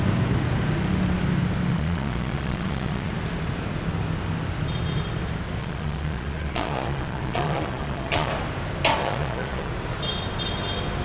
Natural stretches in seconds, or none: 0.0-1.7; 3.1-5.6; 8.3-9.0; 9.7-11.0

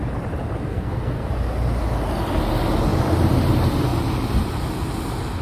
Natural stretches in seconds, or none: 0.0-0.7; 1.3-5.4